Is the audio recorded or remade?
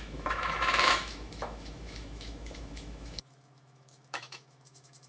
remade